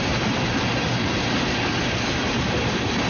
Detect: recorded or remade recorded